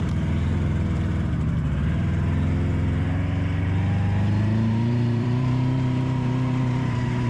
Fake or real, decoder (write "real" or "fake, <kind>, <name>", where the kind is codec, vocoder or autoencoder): fake, vocoder, BigVGAN v2